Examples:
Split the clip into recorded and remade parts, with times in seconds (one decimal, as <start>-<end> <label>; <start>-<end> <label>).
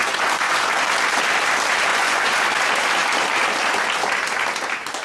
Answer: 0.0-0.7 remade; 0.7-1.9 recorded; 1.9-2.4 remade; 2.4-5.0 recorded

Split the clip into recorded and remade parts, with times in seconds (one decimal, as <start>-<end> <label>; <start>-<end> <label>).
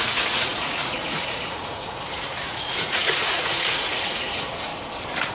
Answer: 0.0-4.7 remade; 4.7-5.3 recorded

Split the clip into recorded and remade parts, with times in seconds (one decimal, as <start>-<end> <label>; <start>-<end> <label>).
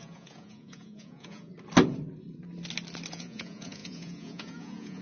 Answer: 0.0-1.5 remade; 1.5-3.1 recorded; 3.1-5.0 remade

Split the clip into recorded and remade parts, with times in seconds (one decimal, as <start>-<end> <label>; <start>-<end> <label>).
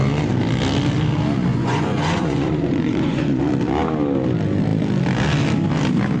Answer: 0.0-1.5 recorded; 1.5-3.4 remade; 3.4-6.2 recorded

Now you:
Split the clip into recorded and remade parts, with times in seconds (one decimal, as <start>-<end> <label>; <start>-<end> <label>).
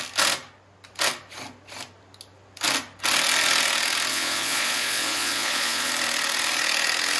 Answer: 0.0-4.1 recorded; 4.1-5.9 remade; 5.9-7.2 recorded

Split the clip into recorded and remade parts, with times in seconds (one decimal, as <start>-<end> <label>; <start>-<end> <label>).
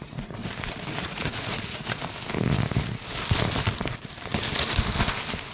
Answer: 0.0-0.4 remade; 0.4-1.0 recorded; 1.0-2.0 remade; 2.0-5.5 recorded